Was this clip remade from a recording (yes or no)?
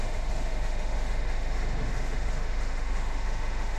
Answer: yes